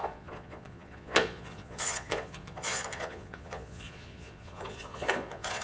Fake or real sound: fake